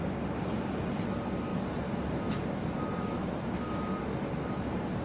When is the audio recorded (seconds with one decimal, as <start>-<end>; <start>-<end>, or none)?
0.0-5.0